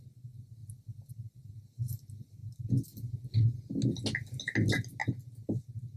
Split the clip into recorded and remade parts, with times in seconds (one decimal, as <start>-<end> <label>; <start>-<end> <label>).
0.0-6.0 recorded